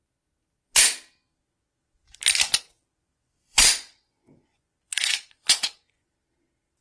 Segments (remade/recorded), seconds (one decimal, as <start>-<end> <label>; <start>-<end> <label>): 0.0-2.8 recorded; 2.8-6.1 remade; 6.1-6.8 recorded